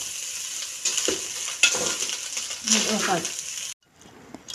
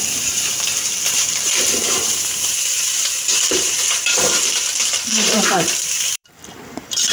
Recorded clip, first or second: first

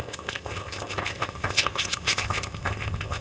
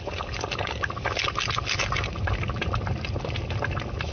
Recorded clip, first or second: second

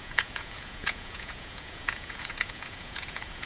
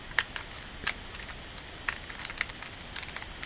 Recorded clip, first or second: second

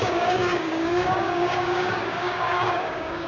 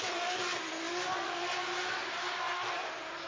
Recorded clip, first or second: second